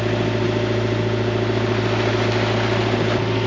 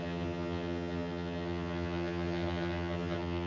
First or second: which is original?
first